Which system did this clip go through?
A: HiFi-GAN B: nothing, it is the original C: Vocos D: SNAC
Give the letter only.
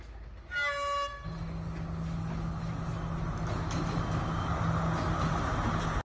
B